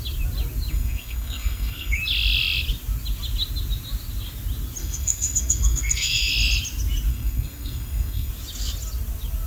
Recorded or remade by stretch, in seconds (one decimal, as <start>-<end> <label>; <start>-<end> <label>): 0.0-0.7 recorded; 0.7-2.0 remade; 2.0-4.8 recorded; 4.8-6.3 remade; 6.3-7.1 recorded; 7.1-8.3 remade; 8.3-9.5 recorded